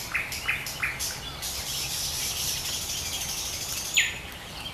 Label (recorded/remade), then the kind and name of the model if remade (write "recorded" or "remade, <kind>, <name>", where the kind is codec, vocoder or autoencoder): recorded